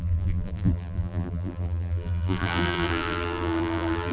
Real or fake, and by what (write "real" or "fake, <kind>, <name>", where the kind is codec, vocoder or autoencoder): fake, vocoder, BigVGAN v2